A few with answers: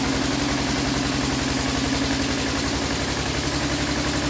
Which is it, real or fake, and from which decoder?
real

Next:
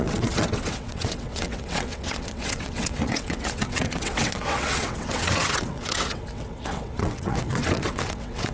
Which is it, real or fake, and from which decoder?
fake, vocoder, WaveNeXt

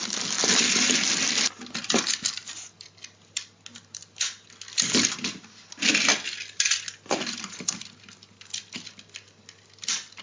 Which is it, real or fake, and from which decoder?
real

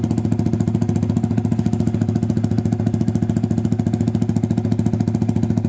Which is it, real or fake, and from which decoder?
real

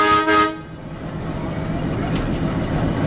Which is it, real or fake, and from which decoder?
real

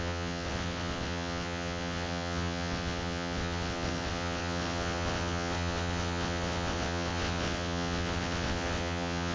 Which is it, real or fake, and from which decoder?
fake, vocoder, WaveNeXt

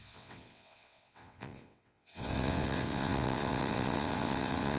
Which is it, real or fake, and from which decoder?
fake, vocoder, WaveNeXt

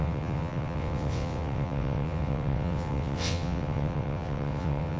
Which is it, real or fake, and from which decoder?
fake, vocoder, WaveNeXt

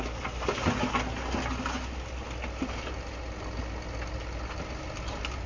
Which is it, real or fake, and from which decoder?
real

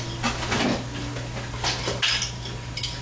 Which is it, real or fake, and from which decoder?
real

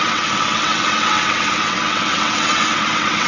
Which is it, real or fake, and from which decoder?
fake, vocoder, WaveNeXt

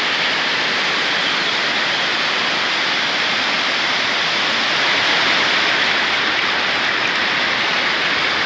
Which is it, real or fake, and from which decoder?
real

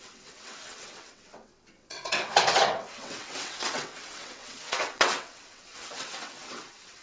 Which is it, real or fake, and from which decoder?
fake, vocoder, WaveNeXt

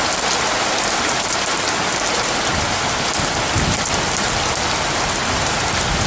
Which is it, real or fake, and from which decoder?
real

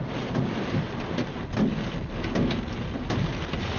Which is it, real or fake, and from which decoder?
real